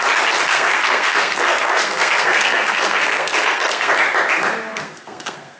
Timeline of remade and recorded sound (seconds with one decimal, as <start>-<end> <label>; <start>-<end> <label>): 0.0-0.5 recorded; 0.5-3.9 remade; 3.9-4.7 recorded; 4.7-5.6 remade